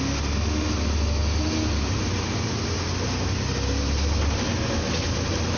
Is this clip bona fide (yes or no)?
yes